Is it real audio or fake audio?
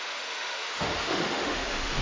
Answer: fake